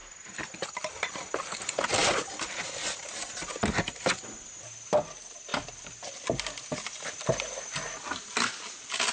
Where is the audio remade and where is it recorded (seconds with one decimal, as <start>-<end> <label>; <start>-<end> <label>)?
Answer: 0.0-1.1 remade; 1.1-9.1 recorded